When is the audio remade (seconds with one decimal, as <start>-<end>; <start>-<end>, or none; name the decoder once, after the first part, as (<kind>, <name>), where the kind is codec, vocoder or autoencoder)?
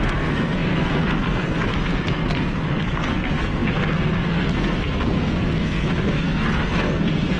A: 0.0-7.4 (codec, SNAC)